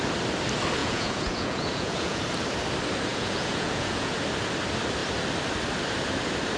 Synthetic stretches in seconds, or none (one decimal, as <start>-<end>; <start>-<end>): 0.8-2.2; 3.1-4.1